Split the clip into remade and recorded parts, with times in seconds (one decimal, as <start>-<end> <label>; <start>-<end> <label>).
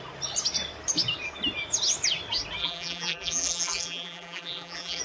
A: 0.0-2.6 recorded; 2.6-5.0 remade